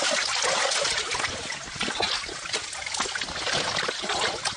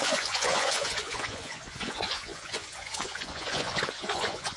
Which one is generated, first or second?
second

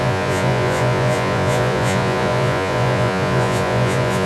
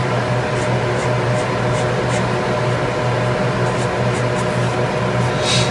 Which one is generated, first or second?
first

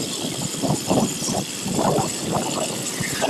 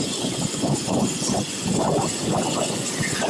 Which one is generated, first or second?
second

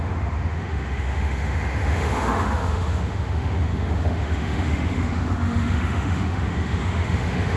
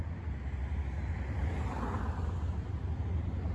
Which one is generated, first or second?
first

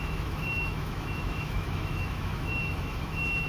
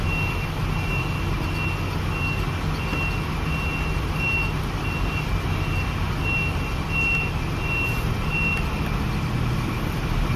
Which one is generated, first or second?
first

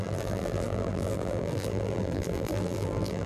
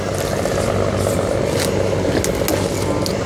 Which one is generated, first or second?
first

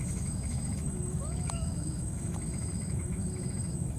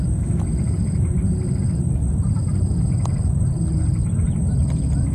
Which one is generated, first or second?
first